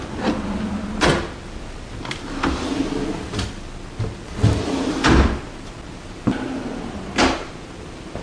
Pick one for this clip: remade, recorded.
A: recorded